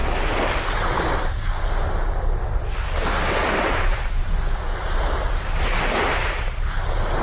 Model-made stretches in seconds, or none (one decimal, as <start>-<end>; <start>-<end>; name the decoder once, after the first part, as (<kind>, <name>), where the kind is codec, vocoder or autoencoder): 3.4-4.3 (vocoder, BigVGAN v2)